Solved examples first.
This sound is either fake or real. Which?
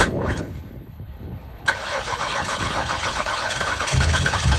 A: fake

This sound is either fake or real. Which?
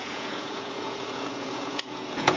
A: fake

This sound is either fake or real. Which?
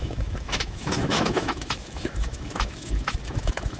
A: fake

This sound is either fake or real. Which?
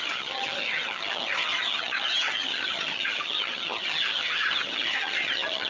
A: fake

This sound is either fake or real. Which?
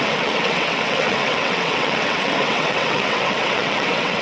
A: fake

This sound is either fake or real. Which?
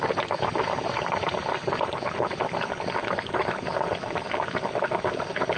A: real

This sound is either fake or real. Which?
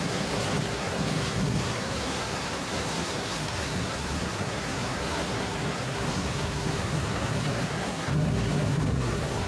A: fake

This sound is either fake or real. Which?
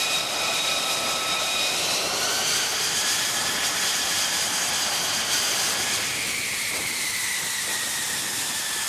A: fake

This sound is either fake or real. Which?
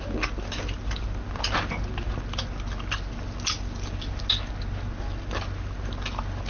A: real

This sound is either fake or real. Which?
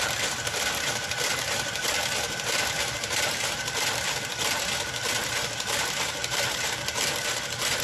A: fake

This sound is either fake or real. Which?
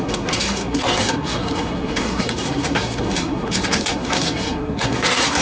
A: fake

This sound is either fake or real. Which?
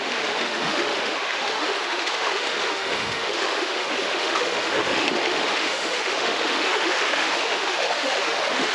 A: fake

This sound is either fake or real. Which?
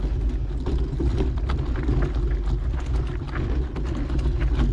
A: real